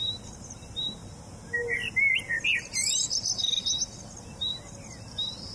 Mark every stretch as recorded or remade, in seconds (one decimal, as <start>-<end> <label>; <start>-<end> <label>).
0.0-5.5 recorded